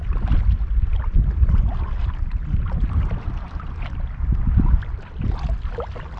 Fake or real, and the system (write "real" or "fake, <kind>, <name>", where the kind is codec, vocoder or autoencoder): real